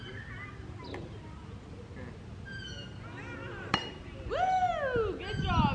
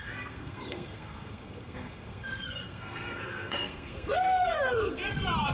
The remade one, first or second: second